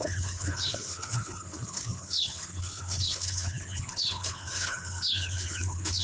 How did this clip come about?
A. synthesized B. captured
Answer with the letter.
A